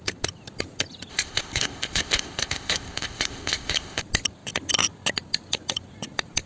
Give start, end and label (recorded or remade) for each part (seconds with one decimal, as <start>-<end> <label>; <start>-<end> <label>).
0.0-1.1 recorded; 1.1-4.0 remade; 4.0-6.5 recorded